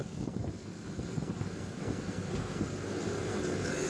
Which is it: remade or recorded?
remade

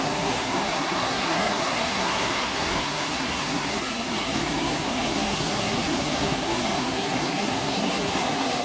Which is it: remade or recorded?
remade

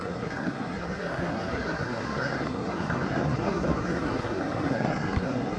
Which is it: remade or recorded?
remade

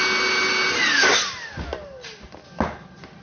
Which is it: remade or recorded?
recorded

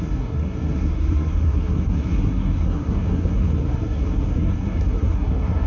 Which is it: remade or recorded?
remade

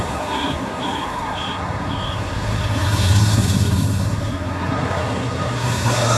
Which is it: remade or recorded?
remade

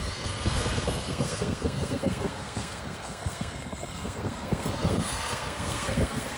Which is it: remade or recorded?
remade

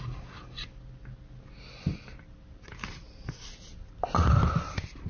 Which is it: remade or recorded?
recorded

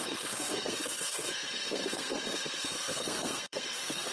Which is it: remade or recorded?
remade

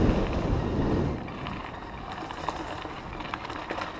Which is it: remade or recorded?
recorded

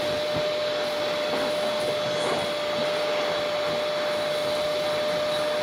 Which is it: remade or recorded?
recorded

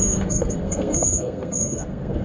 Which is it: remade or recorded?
remade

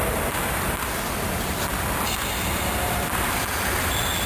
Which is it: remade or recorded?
recorded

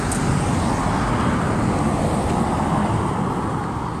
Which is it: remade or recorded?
recorded